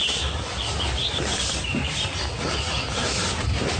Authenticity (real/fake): fake